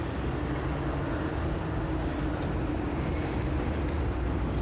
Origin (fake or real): real